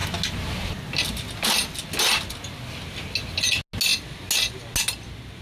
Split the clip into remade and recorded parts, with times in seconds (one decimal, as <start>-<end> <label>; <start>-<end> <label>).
0.0-5.4 recorded